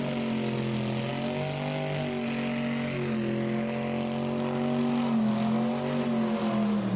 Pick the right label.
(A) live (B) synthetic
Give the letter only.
A